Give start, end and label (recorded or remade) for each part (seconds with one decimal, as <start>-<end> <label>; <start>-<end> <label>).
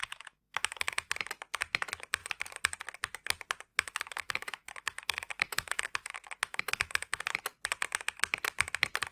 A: 0.0-1.1 remade; 1.1-3.7 recorded; 3.7-7.2 remade; 7.2-9.1 recorded